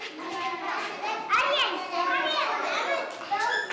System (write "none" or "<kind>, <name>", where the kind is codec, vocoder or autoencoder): none